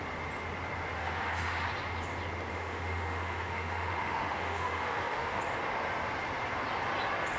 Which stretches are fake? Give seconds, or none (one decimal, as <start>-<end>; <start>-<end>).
1.0-1.7; 2.5-5.4